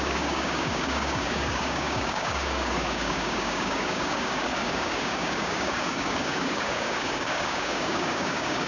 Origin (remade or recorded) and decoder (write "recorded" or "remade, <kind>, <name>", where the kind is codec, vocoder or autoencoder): remade, codec, DAC